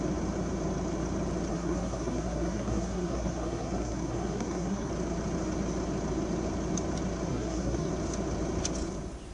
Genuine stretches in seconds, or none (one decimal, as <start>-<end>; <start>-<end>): 0.0-1.5; 4.9-7.3; 7.9-9.3